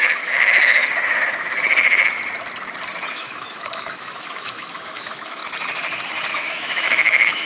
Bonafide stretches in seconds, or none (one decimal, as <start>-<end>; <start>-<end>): 0.8-3.1; 5.4-6.3